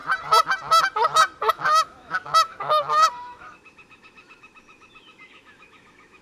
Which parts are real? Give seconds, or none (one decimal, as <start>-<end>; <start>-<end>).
0.0-1.5